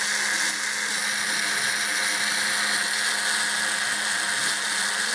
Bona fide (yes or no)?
yes